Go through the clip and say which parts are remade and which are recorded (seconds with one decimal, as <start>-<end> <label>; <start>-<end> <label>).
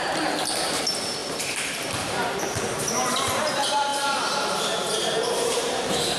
0.0-6.2 remade